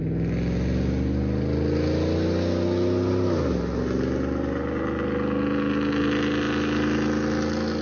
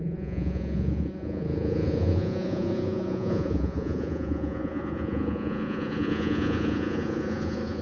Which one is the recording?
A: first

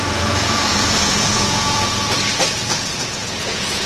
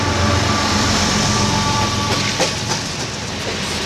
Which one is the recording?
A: second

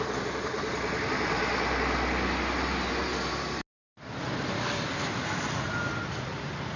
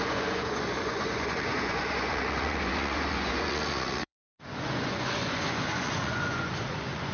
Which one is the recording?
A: first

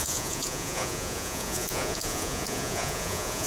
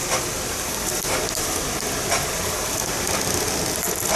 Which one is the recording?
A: second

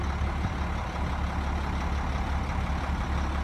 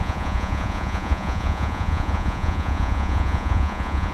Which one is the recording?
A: first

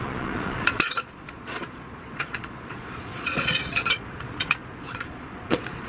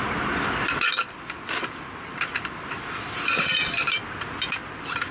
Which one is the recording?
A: second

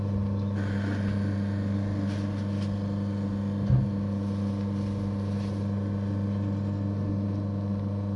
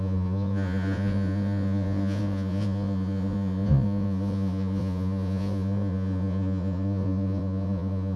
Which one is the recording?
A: first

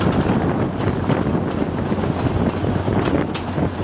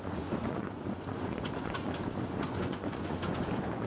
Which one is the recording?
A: first